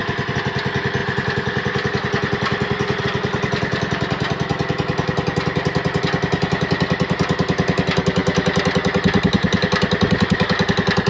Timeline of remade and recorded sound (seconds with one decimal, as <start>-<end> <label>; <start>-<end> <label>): 0.0-11.1 recorded